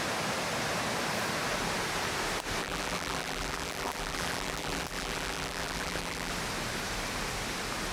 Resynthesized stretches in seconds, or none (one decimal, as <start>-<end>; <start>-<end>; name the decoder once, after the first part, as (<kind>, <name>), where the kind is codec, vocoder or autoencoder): 2.6-6.3 (vocoder, BigVGAN v2)